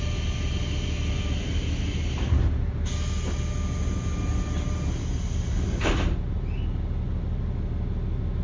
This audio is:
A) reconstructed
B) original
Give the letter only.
B